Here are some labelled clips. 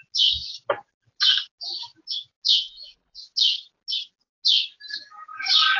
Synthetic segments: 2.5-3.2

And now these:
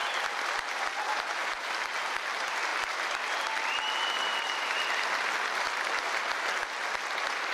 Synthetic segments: 1.4-1.9

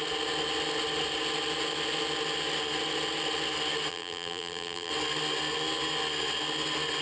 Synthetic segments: 3.9-4.9

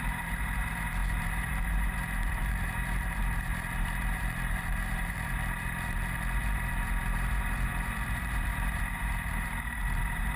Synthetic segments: 0.0-10.4

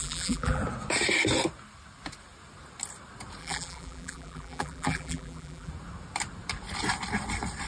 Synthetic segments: 0.0-0.6; 3.4-5.7

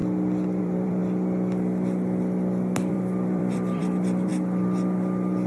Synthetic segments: 0.6-1.0; 2.9-4.3